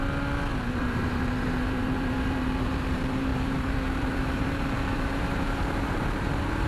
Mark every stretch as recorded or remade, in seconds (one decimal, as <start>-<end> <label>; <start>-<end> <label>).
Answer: 0.0-0.8 recorded; 0.8-6.7 remade